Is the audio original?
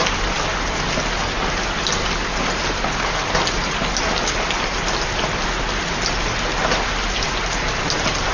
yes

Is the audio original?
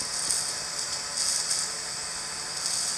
yes